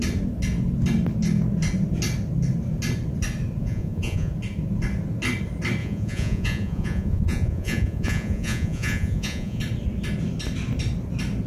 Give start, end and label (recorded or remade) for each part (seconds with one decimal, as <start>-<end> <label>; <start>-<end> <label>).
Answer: 0.0-3.6 recorded; 3.6-4.3 remade; 4.3-5.8 recorded; 5.8-9.6 remade; 9.6-11.5 recorded